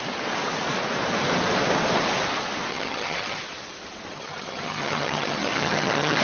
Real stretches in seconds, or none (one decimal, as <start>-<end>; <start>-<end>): 0.0-2.7; 3.4-4.1